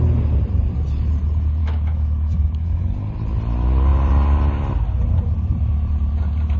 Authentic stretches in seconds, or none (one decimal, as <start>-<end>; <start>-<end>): 0.0-1.6; 2.9-6.6